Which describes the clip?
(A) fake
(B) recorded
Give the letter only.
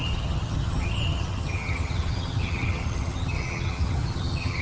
A